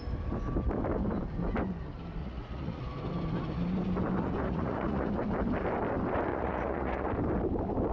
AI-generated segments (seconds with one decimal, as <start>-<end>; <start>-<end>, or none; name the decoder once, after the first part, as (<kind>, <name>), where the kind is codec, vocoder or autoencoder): 2.2-2.8 (vocoder, Vocos); 4.4-5.1; 6.3-7.1